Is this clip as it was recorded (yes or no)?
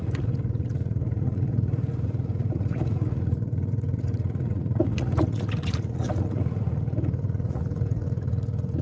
no